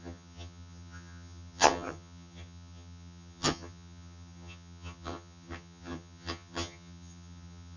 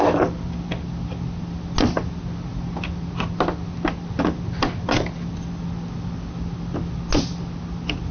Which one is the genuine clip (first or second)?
second